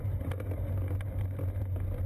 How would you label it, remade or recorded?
recorded